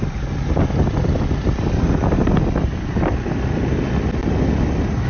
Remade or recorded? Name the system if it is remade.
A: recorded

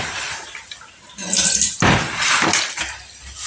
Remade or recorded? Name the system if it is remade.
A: recorded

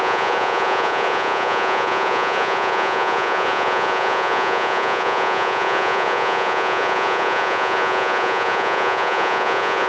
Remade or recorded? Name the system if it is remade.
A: remade, vocoder, Vocos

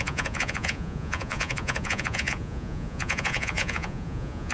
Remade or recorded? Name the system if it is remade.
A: remade, vocoder, Vocos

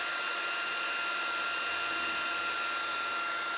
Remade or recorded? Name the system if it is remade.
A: recorded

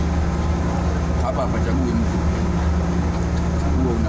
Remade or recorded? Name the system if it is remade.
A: recorded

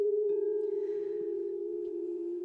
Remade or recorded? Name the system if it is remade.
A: remade, vocoder, Vocos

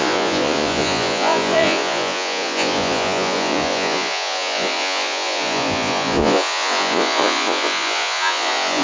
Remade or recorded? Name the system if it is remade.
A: remade, vocoder, Vocos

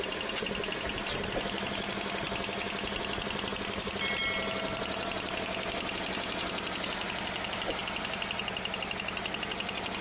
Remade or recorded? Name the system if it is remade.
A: recorded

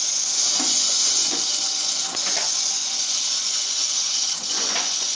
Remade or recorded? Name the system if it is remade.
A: remade, vocoder, Vocos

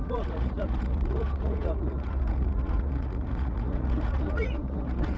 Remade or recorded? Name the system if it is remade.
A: remade, vocoder, Vocos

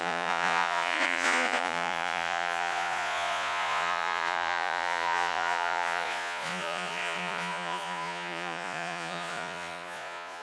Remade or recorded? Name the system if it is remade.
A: remade, vocoder, Vocos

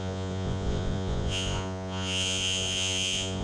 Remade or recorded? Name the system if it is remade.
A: remade, vocoder, Vocos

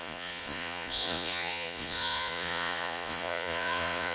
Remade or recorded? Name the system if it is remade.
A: remade, vocoder, Vocos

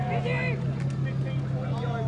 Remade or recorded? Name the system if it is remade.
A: recorded